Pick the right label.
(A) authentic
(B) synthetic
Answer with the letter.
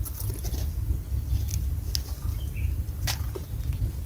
A